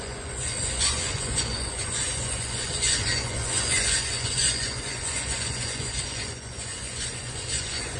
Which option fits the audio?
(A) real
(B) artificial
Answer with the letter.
B